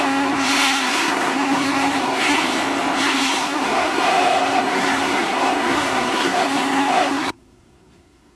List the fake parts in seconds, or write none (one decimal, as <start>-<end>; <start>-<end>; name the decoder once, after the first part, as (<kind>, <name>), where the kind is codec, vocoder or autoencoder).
0.0-2.4 (codec, SNAC); 3.0-8.4